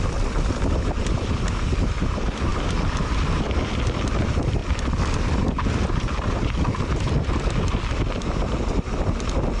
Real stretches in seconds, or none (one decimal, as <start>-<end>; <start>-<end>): none